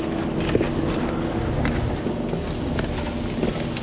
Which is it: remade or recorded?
recorded